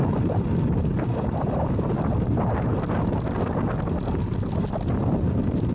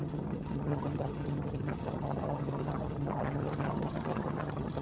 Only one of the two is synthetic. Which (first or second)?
second